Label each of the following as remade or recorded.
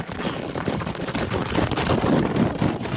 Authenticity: remade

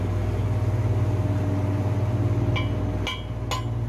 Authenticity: recorded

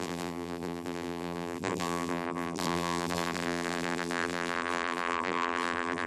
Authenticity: remade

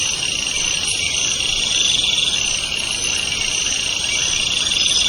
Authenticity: recorded